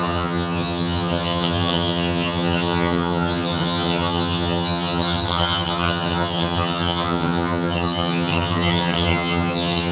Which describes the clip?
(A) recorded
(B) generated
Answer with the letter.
B